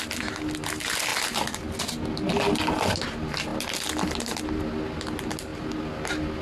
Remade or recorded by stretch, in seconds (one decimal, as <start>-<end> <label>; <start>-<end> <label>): 0.0-6.4 recorded